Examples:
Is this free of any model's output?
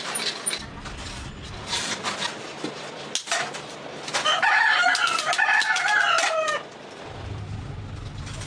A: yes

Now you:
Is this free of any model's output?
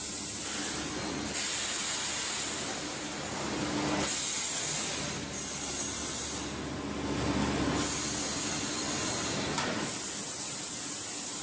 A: yes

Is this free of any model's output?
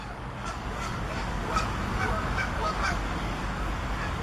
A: no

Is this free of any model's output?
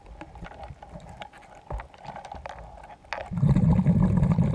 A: yes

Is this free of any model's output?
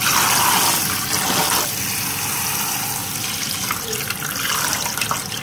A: no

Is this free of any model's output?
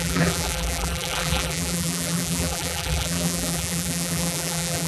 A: no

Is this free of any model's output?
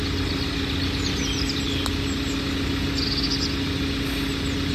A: yes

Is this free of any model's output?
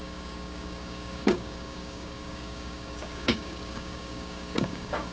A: no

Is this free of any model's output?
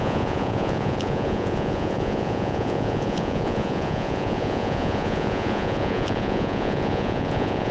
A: no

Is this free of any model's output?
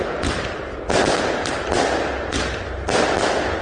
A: yes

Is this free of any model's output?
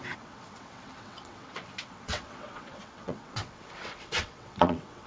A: no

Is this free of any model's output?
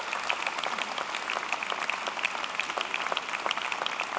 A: yes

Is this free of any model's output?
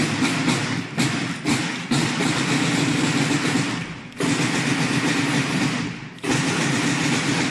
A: yes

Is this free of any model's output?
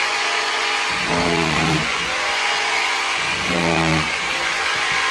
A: no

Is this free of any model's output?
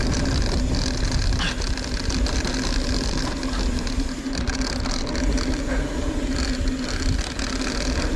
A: yes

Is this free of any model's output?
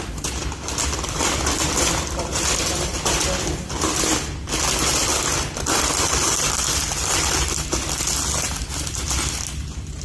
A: yes